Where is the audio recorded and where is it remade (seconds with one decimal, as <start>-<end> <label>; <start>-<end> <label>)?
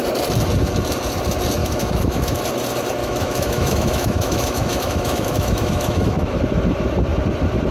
0.0-1.6 recorded; 1.6-2.4 remade; 2.4-3.0 recorded; 3.0-6.4 remade; 6.4-7.7 recorded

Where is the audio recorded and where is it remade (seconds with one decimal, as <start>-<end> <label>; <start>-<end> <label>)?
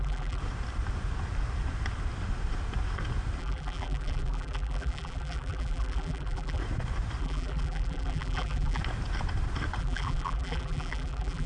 0.0-0.4 remade; 0.4-3.4 recorded; 3.4-6.6 remade; 6.6-7.2 recorded; 7.2-8.8 remade; 8.8-9.8 recorded; 9.8-11.5 remade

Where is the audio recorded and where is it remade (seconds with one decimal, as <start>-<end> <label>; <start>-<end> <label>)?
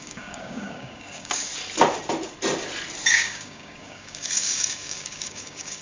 0.0-1.5 remade; 1.5-3.1 recorded; 3.1-5.8 remade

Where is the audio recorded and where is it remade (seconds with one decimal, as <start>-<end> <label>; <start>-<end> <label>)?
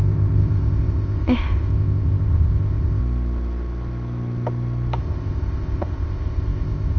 0.0-3.0 remade; 3.0-5.0 recorded; 5.0-7.0 remade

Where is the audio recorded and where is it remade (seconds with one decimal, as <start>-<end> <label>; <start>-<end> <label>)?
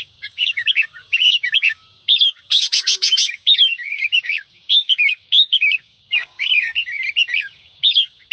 0.0-6.7 remade; 6.7-7.4 recorded; 7.4-8.3 remade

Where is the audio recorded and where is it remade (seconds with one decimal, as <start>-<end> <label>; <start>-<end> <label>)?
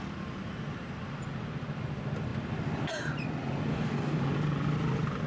0.0-3.7 recorded; 3.7-4.2 remade; 4.2-5.3 recorded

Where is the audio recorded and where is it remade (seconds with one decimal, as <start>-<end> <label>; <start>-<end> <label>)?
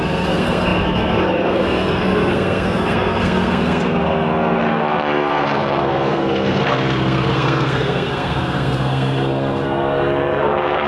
0.0-10.9 remade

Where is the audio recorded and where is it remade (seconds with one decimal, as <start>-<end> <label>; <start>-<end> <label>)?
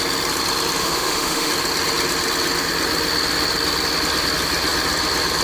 0.0-0.8 recorded; 0.8-1.5 remade; 1.5-5.4 recorded